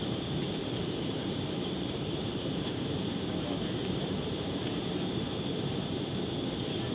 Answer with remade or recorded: remade